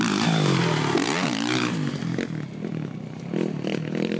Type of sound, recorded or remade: recorded